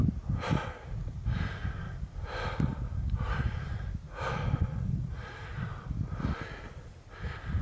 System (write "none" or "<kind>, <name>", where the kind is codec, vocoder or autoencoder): none